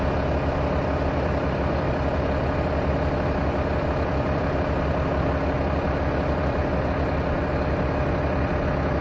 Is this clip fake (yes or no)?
no